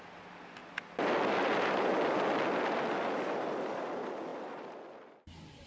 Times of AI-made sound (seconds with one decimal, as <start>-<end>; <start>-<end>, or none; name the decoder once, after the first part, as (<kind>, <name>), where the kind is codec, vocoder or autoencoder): none